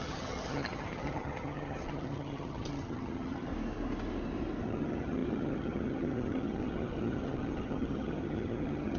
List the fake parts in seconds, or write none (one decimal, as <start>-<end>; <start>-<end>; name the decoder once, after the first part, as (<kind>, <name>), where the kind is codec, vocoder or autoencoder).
0.0-3.5 (vocoder, HiFi-GAN); 4.6-9.0